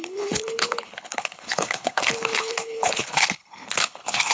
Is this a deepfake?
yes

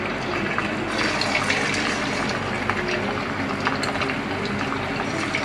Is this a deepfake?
no